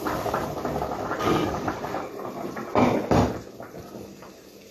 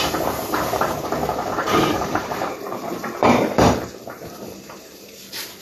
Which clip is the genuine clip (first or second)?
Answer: first